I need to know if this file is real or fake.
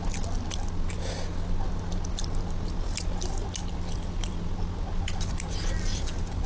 real